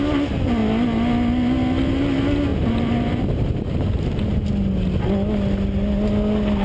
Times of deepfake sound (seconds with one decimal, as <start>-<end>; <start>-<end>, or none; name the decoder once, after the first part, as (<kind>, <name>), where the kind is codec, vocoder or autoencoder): 2.5-4.3 (vocoder, BigVGAN v2)